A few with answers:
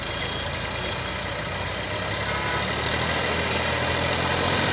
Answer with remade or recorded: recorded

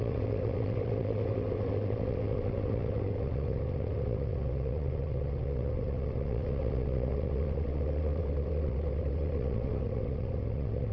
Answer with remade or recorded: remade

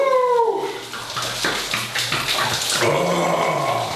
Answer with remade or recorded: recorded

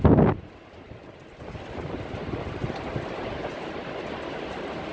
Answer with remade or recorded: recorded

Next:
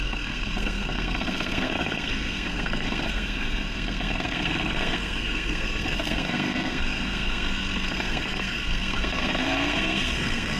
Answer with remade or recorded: remade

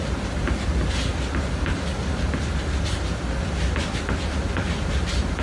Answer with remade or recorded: recorded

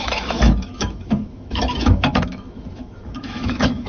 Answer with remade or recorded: remade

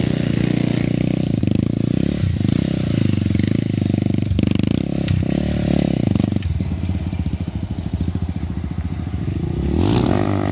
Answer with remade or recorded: recorded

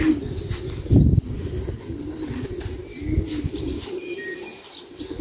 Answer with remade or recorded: recorded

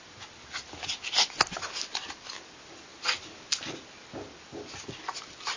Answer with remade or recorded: recorded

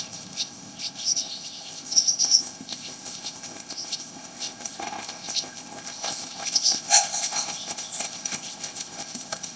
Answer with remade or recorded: remade